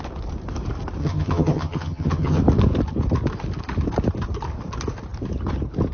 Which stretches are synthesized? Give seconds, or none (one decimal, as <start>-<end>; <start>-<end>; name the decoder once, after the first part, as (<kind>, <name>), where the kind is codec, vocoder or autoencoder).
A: 1.0-2.4 (vocoder, HiFi-GAN)